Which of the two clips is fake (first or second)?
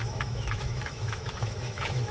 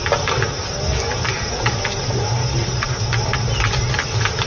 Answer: first